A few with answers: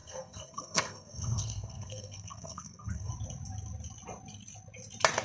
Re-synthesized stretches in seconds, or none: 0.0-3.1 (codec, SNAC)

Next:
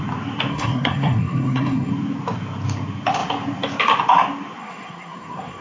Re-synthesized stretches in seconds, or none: 0.5-1.9 (codec, SNAC); 4.6-5.6

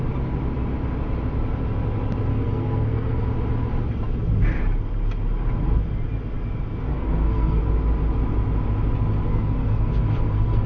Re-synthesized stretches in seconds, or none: 2.3-3.2 (codec, SNAC); 6.9-7.6; 9.3-10.7

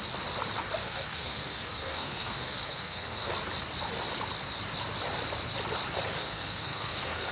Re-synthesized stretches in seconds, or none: 0.8-3.3 (codec, SNAC); 6.2-7.3